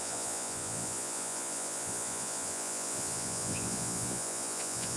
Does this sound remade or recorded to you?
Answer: remade